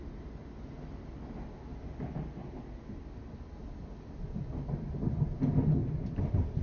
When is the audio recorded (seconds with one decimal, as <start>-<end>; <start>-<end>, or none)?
0.0-6.6